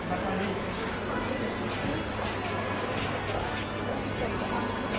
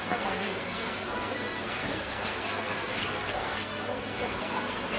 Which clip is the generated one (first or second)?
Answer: second